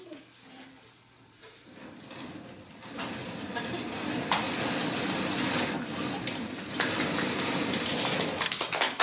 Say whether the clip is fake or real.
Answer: real